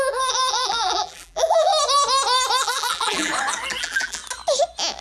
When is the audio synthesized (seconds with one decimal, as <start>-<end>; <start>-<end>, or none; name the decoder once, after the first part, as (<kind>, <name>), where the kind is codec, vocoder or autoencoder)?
0.0-1.7 (vocoder, BigVGAN v2); 2.6-3.3; 3.8-4.2

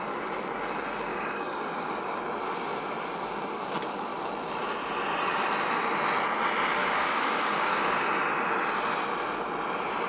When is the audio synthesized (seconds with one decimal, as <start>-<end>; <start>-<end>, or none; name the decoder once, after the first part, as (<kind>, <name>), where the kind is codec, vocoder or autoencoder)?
1.1-2.2 (codec, DAC); 6.8-8.0

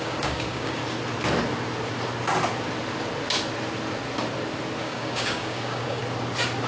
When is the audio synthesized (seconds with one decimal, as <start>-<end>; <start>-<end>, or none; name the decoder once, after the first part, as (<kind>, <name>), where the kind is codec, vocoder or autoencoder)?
0.0-0.8 (codec, DAC); 4.8-6.0

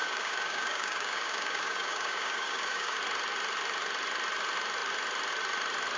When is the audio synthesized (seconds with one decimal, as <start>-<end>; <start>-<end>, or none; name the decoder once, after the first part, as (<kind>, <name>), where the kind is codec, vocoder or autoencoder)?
0.0-3.0 (codec, DAC)

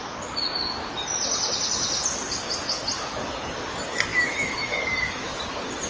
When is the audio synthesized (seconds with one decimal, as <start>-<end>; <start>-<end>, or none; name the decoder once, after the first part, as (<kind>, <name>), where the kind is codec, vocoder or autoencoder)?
4.1-5.4 (autoencoder, DAC-VAE)

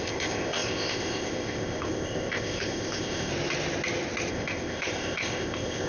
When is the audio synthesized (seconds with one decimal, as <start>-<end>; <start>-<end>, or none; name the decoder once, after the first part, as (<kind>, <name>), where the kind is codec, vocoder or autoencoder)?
0.0-3.3 (codec, ZipCodec); 4.3-5.9

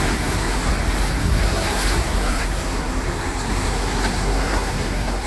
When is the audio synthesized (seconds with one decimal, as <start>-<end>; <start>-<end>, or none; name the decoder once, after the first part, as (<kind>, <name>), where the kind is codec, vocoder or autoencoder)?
0.0-0.7 (codec, SNAC); 1.2-5.3

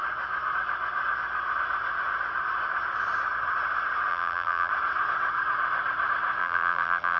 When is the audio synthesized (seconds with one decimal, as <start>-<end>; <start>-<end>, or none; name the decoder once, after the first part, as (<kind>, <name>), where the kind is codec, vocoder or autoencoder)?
4.1-4.7 (vocoder, BigVGAN v2); 6.4-7.2